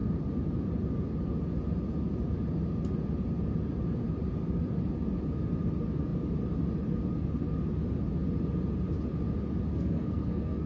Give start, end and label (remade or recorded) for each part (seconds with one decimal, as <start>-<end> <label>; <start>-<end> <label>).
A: 0.0-9.7 recorded; 9.7-10.7 remade